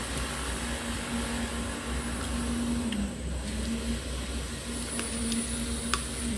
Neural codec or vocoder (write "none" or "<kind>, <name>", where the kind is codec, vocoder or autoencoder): none